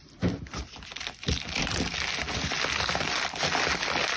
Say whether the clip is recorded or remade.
recorded